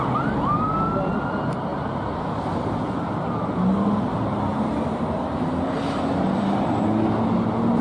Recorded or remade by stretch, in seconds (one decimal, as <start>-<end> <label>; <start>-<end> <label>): 0.0-7.8 recorded